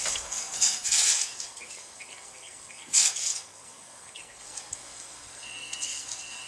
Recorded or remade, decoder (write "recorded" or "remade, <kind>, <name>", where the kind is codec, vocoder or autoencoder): remade, codec, SNAC